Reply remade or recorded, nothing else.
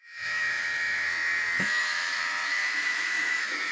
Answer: remade